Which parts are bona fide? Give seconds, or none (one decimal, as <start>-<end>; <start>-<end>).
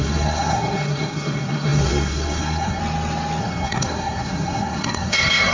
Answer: 2.8-3.4